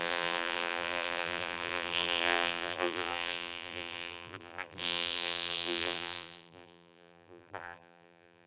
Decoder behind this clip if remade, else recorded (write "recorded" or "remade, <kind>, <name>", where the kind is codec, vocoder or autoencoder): remade, vocoder, BigVGAN v2